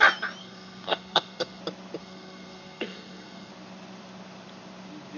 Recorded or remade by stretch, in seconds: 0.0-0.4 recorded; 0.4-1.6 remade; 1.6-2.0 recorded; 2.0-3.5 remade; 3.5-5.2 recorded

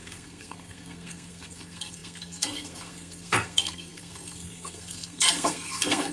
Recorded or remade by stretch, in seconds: 0.0-6.1 remade